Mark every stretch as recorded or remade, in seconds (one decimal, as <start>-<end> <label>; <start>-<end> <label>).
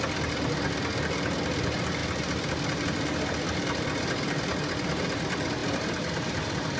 0.0-5.6 recorded; 5.6-6.8 remade